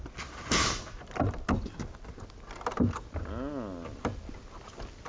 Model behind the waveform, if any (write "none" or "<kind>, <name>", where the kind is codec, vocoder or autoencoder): none